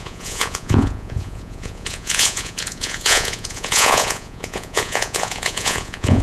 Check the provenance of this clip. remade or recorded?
remade